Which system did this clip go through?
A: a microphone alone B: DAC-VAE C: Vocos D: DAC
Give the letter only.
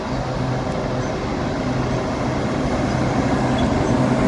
A